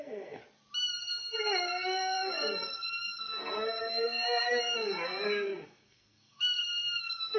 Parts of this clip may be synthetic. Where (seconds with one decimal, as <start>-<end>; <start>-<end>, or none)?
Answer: 0.0-0.4; 1.0-7.4